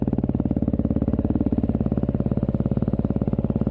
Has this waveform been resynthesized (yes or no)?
no